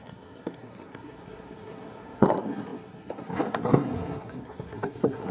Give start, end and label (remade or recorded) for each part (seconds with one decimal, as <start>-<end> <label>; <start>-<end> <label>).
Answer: 0.0-5.3 remade